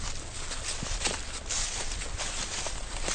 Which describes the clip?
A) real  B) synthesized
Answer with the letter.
B